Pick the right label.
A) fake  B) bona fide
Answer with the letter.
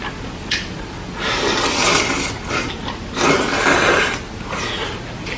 B